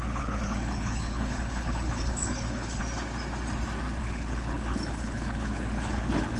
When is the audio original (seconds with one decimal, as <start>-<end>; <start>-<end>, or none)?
2.8-4.0